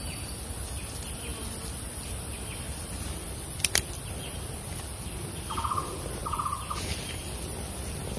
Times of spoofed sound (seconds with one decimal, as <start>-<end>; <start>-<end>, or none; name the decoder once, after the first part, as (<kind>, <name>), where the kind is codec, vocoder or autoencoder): 1.3-5.4 (vocoder, BigVGAN v2); 6.2-8.2